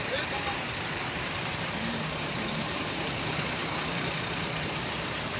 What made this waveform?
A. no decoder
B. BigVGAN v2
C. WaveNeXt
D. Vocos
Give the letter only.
B